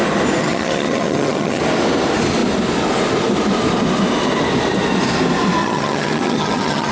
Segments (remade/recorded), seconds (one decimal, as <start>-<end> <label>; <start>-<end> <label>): 0.0-0.4 recorded; 0.4-1.6 remade; 1.6-5.6 recorded; 5.6-6.9 remade